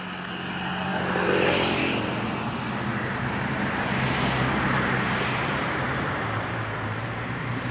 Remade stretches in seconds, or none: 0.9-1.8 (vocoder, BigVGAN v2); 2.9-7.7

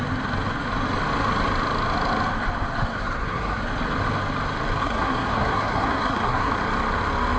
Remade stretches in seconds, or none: 2.8-3.6 (codec, SNAC); 4.8-6.5

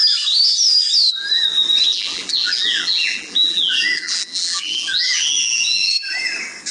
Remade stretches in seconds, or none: 1.9-5.9 (vocoder, BigVGAN v2)

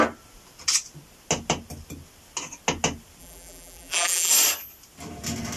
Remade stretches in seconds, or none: 3.2-4.3 (vocoder, BigVGAN v2)

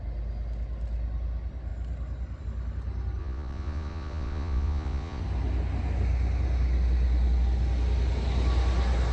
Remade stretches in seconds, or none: 3.2-5.2 (vocoder, Vocos)

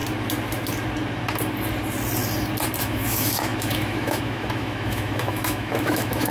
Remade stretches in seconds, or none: 2.8-6.3 (autoencoder, DAC-VAE)

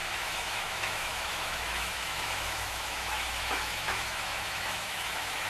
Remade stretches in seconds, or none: 0.0-5.5 (autoencoder, DAC-VAE)

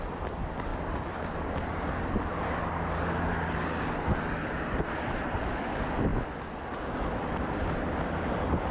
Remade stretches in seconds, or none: none